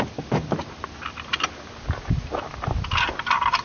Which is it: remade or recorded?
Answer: recorded